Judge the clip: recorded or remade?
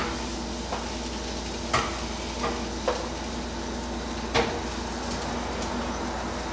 recorded